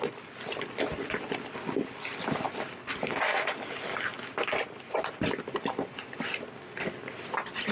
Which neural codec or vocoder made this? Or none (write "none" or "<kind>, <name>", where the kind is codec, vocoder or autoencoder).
none